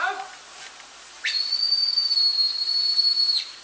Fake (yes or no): no